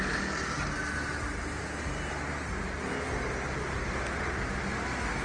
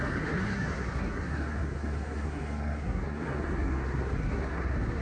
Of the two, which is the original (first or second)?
first